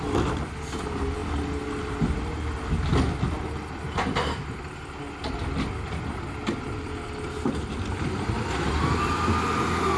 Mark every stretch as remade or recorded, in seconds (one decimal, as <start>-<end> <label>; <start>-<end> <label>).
0.0-10.0 recorded